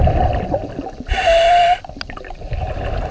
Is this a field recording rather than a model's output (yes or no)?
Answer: yes